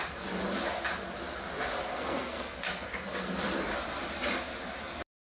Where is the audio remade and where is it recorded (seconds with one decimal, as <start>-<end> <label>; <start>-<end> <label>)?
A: 0.0-1.9 recorded; 1.9-3.3 remade; 3.3-5.3 recorded